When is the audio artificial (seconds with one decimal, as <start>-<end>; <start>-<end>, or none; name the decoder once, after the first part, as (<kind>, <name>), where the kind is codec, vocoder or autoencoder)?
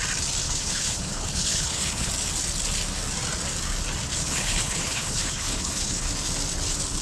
0.4-2.1 (codec, HILCodec); 4.2-6.1